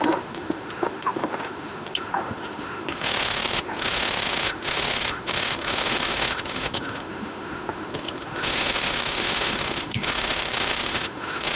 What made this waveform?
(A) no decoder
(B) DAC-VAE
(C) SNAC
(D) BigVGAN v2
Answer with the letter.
B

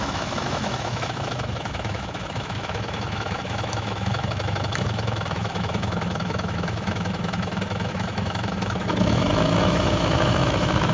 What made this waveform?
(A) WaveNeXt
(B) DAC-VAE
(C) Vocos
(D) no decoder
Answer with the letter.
B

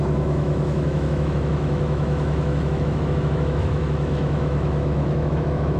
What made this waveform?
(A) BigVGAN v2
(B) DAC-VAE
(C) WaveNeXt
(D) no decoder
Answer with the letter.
B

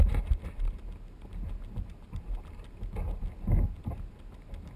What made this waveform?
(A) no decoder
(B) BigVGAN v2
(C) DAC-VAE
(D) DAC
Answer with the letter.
A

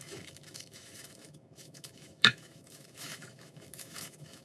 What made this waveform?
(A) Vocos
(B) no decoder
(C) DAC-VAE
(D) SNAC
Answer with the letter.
C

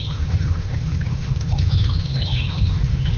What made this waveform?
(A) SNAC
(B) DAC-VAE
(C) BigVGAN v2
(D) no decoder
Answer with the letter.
B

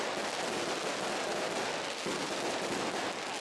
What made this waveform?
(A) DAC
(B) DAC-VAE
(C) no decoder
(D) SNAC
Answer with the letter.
C